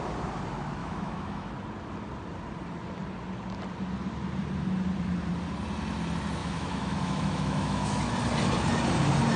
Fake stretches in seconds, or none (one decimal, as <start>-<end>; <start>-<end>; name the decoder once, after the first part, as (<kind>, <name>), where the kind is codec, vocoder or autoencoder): 0.8-1.5 (autoencoder, DAC-VAE); 6.4-8.1